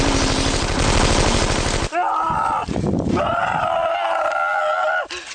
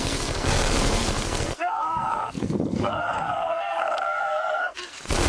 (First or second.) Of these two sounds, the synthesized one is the second